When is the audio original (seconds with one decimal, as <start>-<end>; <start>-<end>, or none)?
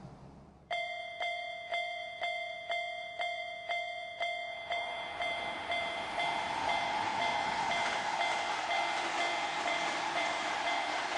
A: 7.1-9.6